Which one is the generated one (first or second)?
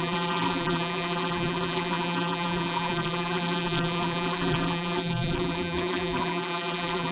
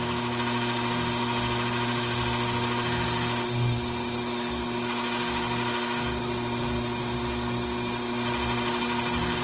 first